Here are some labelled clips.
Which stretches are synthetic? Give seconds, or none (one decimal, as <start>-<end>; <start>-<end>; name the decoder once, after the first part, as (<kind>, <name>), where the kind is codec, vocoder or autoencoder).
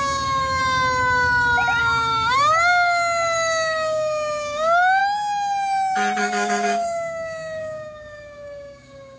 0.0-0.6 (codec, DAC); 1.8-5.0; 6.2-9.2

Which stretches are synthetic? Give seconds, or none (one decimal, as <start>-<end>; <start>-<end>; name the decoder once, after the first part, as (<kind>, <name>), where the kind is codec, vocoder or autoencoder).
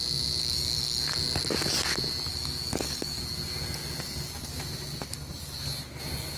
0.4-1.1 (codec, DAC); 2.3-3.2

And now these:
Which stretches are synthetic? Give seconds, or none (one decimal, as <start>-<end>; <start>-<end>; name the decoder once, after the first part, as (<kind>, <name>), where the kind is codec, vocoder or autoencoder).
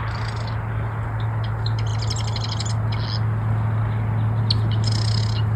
none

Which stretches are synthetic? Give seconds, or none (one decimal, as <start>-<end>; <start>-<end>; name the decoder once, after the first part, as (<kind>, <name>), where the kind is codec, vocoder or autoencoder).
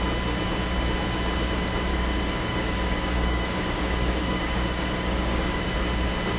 1.9-5.7 (codec, DAC)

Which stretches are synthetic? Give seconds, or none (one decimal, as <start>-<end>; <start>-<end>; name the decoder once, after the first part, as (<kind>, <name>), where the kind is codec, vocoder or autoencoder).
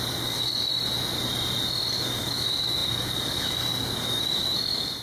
0.0-0.7 (codec, DAC); 1.9-5.0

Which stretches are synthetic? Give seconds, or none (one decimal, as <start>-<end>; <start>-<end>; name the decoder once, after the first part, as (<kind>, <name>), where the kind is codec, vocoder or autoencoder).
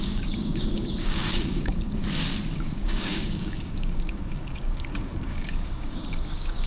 0.0-2.0 (codec, DAC); 2.5-6.7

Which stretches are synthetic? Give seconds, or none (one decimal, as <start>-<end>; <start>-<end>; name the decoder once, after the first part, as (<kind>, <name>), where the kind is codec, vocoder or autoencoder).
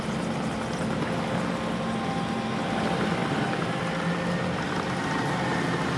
none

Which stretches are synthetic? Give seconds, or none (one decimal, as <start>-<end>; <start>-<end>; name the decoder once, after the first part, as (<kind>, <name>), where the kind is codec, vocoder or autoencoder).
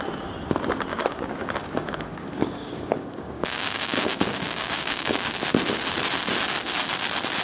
0.9-5.3 (codec, DAC)